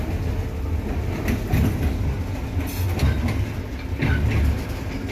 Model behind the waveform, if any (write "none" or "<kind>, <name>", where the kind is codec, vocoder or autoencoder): none